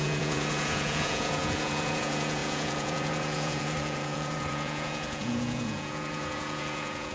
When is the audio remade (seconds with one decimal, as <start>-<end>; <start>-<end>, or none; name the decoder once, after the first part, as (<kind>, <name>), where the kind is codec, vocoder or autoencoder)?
0.0-7.1 (vocoder, Vocos)